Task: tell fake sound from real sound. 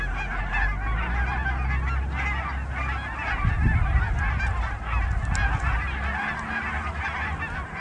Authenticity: real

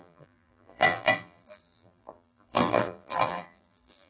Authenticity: fake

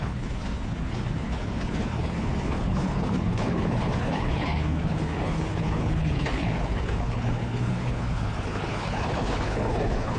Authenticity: fake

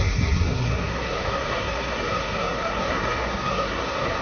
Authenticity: fake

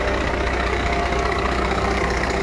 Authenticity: fake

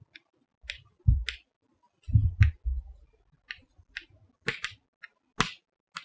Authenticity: real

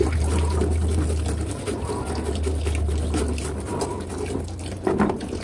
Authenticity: real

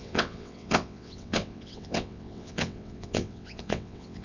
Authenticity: fake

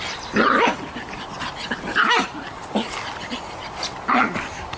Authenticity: real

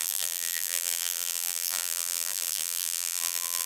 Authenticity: fake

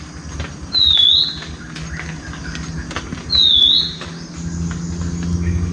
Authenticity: real